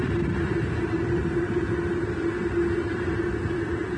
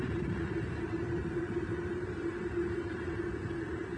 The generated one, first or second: second